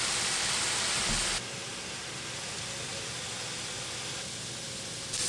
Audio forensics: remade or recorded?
recorded